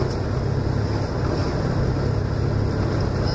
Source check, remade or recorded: recorded